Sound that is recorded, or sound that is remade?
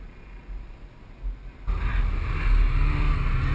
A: recorded